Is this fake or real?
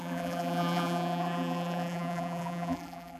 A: fake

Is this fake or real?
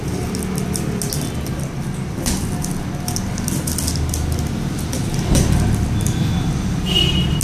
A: real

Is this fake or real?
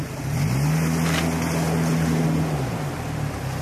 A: real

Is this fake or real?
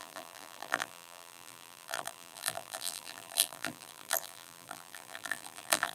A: fake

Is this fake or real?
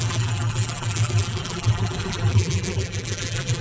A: fake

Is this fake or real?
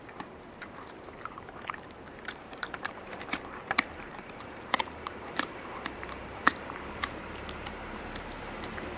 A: fake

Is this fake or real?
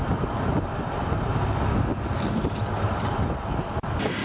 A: real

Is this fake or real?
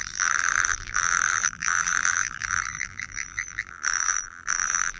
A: fake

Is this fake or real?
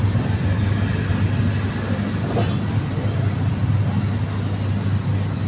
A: real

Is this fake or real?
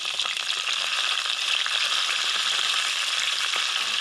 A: fake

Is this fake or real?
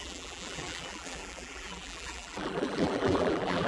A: fake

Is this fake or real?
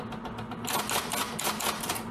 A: real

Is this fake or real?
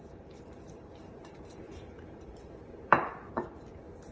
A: fake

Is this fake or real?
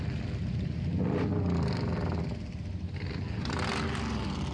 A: real